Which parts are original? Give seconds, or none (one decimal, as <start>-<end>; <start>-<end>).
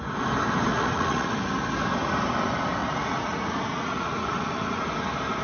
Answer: 0.0-0.7; 1.3-2.8; 4.8-5.4